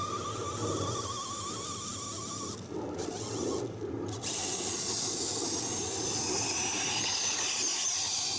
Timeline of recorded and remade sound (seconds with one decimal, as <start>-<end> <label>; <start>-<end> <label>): 0.0-8.4 recorded